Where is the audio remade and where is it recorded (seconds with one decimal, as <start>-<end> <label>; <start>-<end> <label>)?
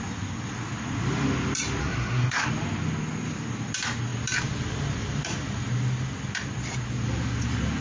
0.0-1.8 recorded; 1.8-2.5 remade; 2.5-7.8 recorded